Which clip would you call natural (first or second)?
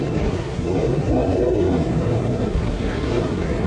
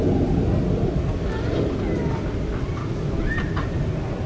second